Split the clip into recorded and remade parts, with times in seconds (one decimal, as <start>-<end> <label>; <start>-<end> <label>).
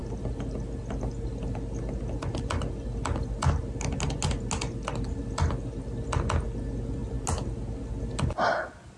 0.0-9.0 recorded